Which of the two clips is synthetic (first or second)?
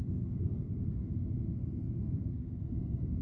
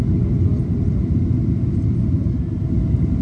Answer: first